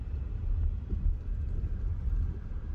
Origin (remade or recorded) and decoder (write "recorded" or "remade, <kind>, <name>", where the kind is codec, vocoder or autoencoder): remade, vocoder, BigVGAN v2